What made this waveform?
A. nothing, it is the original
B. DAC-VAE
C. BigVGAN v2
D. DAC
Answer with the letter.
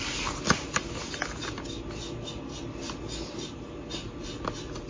A